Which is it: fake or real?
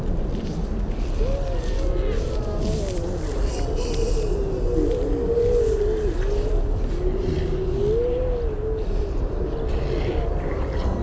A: real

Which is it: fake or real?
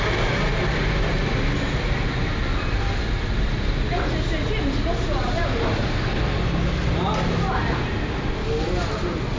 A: real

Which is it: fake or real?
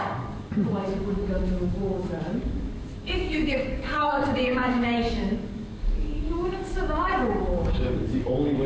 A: fake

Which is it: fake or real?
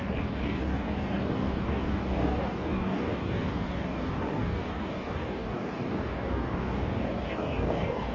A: fake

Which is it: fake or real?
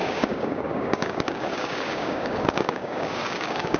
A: fake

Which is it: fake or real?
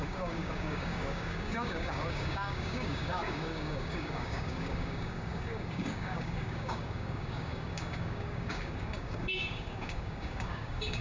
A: fake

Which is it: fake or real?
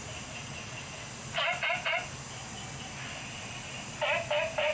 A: real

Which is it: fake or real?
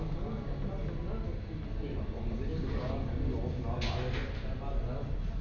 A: real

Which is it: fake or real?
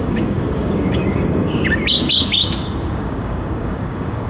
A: fake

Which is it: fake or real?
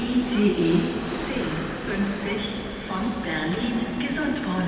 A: real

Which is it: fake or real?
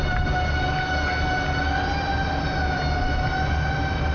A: real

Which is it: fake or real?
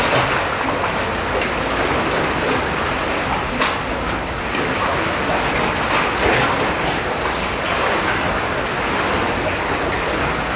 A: real